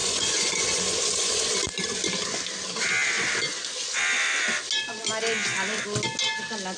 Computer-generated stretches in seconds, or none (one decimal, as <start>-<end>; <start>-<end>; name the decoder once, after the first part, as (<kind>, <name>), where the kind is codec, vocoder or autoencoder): 0.0-1.5 (vocoder, Vocos)